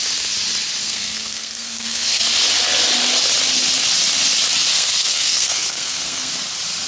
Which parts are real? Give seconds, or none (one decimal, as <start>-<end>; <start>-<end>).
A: 0.0-0.8; 2.2-4.7; 6.3-6.9